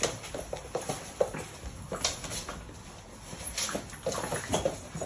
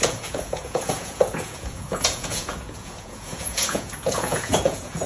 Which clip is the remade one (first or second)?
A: second